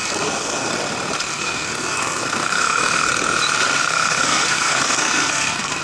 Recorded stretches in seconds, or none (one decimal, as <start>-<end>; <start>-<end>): 0.7-1.3; 3.1-3.8